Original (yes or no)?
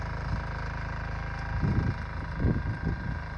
yes